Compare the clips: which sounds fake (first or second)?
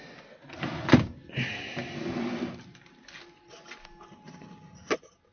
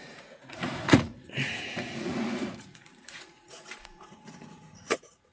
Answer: second